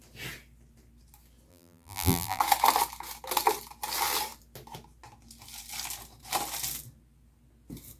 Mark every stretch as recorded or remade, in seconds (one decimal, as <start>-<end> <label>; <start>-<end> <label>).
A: 0.0-1.5 recorded; 1.5-2.4 remade; 2.4-8.0 recorded